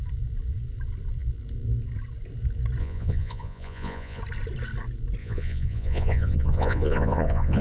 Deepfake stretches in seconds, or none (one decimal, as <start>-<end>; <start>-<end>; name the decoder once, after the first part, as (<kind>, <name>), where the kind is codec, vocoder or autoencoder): 2.8-4.2 (vocoder, Vocos); 5.2-7.6